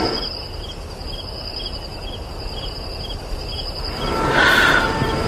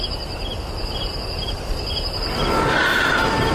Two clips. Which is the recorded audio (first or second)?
first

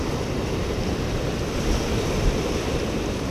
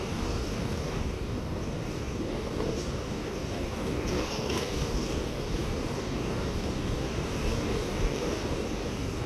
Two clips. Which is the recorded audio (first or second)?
first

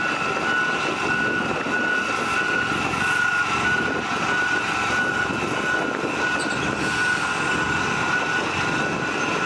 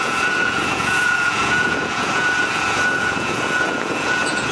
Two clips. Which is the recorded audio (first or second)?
first